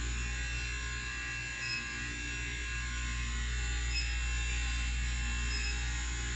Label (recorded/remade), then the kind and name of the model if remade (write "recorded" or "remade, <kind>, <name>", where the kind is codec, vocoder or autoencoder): recorded